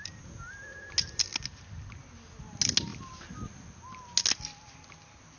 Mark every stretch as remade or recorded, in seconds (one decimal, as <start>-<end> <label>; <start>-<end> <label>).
0.0-5.4 recorded